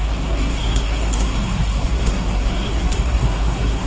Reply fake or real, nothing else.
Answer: fake